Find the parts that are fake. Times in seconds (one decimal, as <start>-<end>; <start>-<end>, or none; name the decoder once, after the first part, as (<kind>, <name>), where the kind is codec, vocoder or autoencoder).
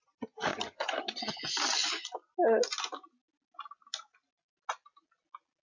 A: 0.5-1.4 (vocoder, HiFi-GAN)